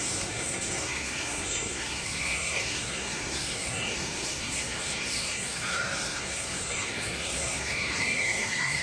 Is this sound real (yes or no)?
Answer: no